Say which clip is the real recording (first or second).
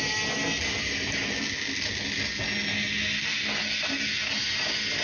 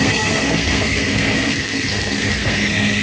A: first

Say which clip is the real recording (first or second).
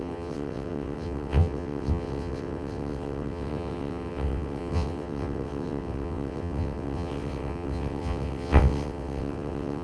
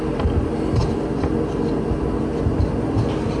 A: second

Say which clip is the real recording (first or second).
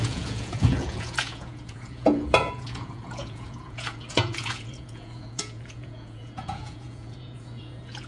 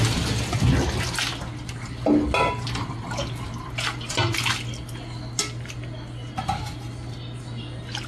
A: second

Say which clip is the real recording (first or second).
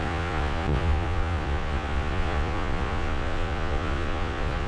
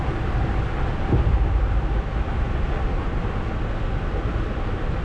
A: second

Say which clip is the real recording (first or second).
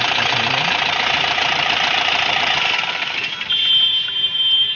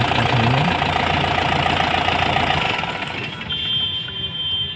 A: second